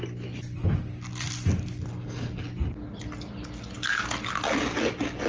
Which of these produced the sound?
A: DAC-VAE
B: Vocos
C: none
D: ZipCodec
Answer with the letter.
C